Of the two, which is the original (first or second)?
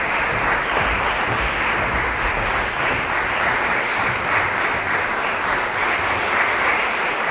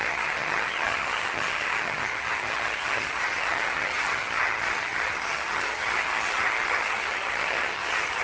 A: first